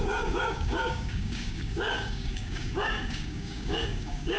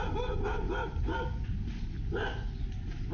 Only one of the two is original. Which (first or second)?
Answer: second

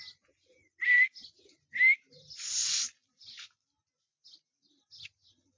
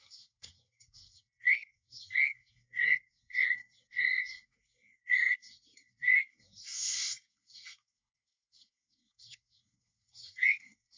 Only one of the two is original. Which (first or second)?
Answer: first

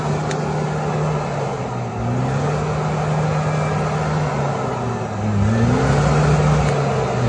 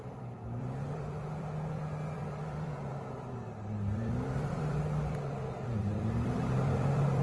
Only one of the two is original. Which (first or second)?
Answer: first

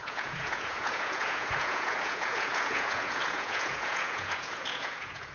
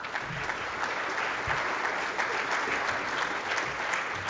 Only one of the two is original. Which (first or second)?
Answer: second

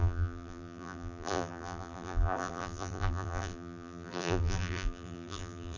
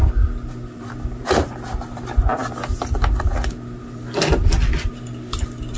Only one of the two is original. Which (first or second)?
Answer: second